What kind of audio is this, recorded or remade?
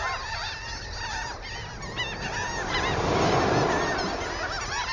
recorded